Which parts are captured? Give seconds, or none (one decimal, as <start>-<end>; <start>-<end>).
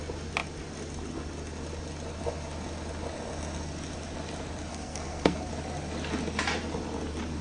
0.0-4.7; 5.5-7.4